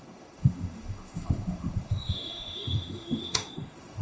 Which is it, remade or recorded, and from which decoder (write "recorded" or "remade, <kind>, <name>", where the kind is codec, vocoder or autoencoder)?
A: remade, autoencoder, DAC-VAE